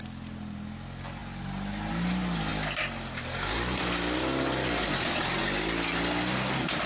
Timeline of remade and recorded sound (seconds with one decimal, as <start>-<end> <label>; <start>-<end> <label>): 0.0-6.9 recorded